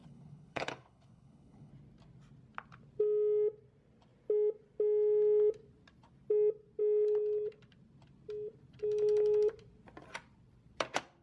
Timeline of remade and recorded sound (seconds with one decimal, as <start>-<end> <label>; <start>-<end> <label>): 0.0-1.7 remade; 1.7-11.2 recorded